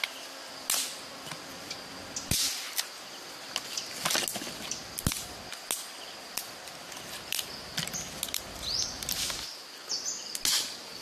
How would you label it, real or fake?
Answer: real